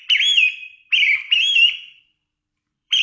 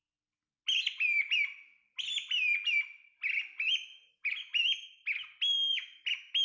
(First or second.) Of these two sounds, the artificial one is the first